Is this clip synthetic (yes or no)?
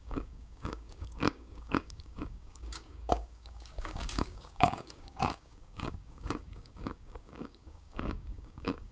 yes